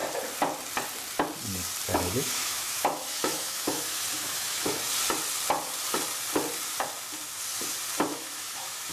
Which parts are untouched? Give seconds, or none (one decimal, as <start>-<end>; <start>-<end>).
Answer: 0.0-1.9; 4.9-8.1